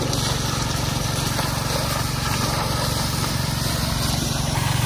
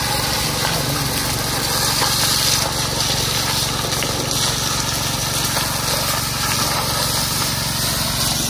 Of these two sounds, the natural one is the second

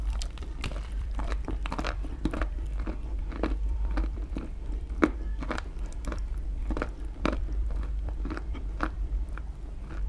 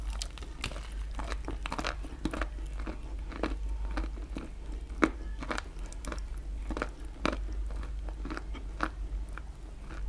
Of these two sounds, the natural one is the second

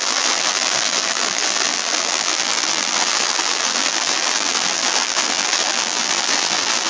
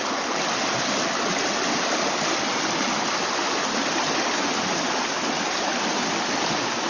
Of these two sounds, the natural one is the second